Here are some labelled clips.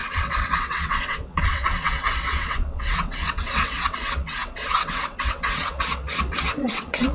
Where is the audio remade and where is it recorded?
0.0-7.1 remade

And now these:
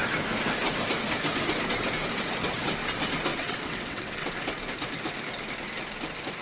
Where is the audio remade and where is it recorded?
0.0-3.3 recorded; 3.3-4.3 remade; 4.3-6.4 recorded